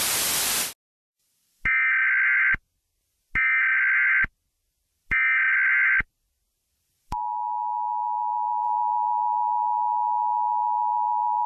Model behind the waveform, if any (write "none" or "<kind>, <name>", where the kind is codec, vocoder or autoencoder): none